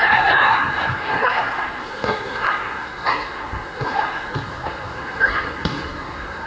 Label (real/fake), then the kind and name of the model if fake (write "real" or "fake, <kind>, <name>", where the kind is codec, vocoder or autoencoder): fake, codec, SNAC